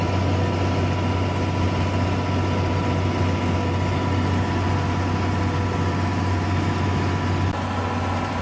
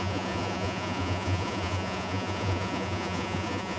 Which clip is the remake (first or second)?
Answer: second